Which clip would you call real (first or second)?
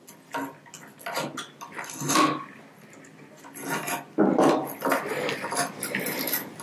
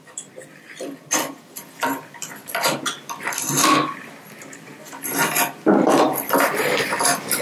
first